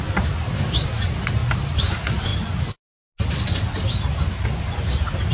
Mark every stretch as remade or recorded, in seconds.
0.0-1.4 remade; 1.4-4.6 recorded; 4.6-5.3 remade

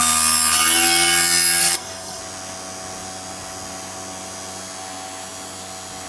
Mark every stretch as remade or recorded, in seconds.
0.0-1.6 recorded; 1.6-2.2 remade; 2.2-6.1 recorded

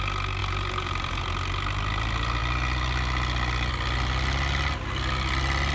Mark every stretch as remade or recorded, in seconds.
0.0-0.4 recorded; 0.4-1.2 remade; 1.2-5.7 recorded

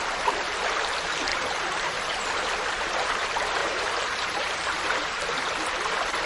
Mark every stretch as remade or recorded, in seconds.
0.0-1.3 recorded; 1.3-2.2 remade; 2.2-3.6 recorded; 3.6-5.2 remade; 5.2-6.3 recorded

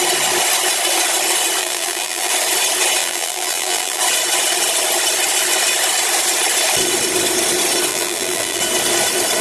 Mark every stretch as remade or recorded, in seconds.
0.0-1.6 recorded; 1.6-2.3 remade; 2.3-3.0 recorded; 3.0-4.0 remade; 4.0-7.9 recorded; 7.9-8.6 remade; 8.6-9.4 recorded